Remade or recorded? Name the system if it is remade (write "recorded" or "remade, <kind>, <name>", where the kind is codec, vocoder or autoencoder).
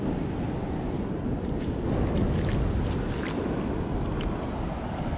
recorded